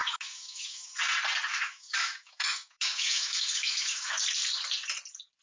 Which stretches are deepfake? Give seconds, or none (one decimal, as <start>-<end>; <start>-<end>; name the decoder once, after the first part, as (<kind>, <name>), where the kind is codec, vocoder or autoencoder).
0.0-1.0 (autoencoder, DAC-VAE); 1.5-4.1

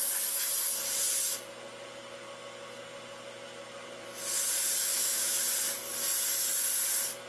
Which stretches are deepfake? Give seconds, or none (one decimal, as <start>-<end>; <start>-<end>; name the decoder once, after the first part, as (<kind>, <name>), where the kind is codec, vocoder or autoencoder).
4.9-5.4 (autoencoder, DAC-VAE)